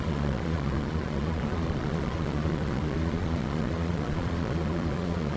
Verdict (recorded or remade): remade